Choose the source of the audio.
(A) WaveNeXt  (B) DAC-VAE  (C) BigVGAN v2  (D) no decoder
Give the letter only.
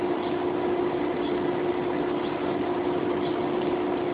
D